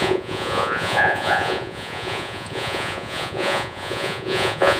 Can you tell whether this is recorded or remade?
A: remade